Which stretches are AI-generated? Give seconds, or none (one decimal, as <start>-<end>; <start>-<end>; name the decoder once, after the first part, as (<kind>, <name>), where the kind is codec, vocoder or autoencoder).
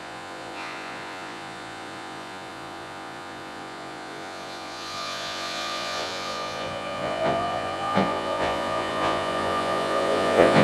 0.0-10.6 (vocoder, Vocos)